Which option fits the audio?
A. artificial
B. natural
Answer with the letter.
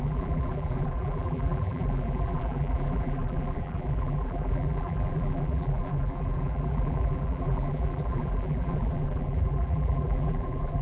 A